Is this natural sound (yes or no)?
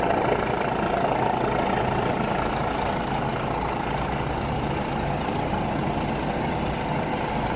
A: yes